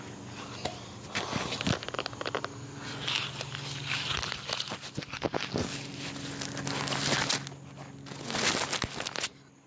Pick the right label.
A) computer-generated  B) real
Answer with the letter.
B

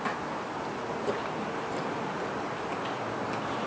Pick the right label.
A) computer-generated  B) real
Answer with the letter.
B